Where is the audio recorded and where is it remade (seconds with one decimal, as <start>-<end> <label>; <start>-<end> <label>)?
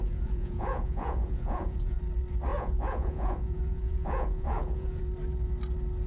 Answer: 0.0-2.0 remade; 2.0-2.5 recorded; 2.5-5.0 remade; 5.0-6.1 recorded